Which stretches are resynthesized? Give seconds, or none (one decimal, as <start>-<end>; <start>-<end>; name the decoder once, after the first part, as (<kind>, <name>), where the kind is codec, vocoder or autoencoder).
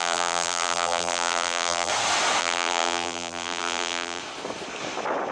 0.0-1.9 (vocoder, BigVGAN v2); 2.4-4.2